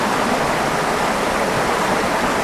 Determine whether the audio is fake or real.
fake